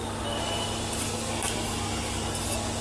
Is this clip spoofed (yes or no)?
no